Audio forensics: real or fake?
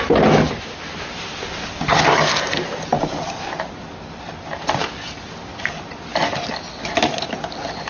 real